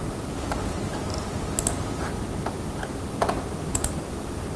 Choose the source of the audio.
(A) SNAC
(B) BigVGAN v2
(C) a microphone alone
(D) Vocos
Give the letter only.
C